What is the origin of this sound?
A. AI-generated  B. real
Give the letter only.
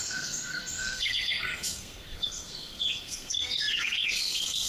A